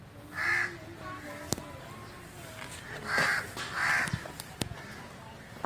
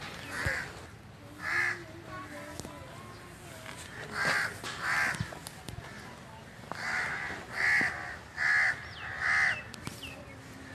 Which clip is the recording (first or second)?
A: second